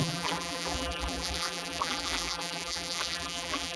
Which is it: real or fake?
fake